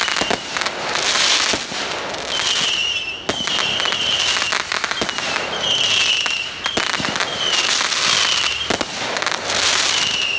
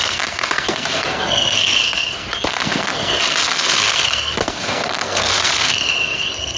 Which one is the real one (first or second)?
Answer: first